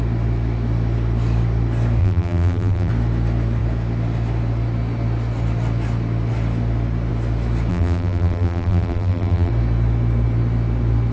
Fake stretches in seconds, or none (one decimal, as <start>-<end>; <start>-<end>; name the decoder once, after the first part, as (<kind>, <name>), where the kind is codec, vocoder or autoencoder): 2.0-2.9 (vocoder, BigVGAN v2); 7.7-9.5

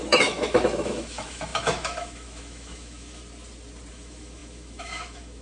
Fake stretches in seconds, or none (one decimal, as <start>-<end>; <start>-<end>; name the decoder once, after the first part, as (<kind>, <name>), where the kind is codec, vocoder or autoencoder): 0.0-3.2 (autoencoder, DAC-VAE); 3.9-5.4

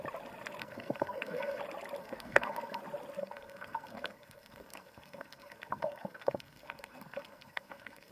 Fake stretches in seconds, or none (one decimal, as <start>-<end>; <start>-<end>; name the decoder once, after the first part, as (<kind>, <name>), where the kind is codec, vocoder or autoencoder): 0.6-1.6 (codec, SNAC); 2.0-2.8; 3.2-8.1

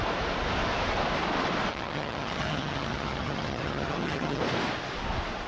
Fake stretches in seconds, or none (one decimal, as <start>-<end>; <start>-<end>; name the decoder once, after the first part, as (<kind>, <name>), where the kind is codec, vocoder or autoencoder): 1.7-4.4 (vocoder, HiFi-GAN)

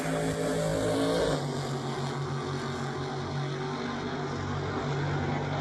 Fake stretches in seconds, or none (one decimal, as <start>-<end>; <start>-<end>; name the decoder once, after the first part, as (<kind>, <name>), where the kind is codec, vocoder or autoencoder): none

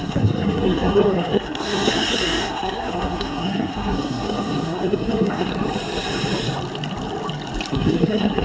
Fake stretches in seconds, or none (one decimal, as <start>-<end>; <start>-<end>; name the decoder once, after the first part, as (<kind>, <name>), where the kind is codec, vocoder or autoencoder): 0.0-5.5 (codec, SNAC); 7.7-8.4

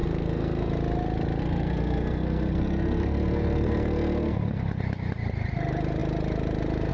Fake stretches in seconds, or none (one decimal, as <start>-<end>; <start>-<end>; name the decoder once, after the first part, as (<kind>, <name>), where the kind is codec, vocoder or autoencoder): 0.0-0.7 (codec, SNAC); 1.4-4.6